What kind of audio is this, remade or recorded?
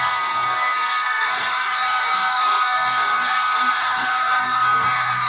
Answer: remade